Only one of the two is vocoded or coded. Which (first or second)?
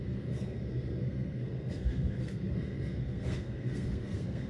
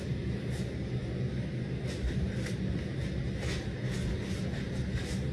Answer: first